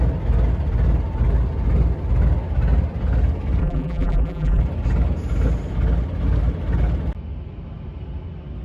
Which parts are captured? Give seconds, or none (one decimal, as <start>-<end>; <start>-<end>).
0.0-3.6; 4.6-8.6